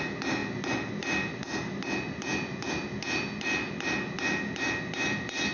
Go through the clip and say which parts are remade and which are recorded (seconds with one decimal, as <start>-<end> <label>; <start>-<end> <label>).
0.0-5.5 recorded

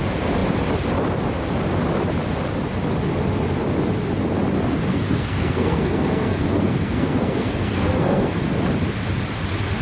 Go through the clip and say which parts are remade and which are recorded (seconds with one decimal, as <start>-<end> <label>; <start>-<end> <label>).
0.0-4.9 recorded; 4.9-8.4 remade; 8.4-9.8 recorded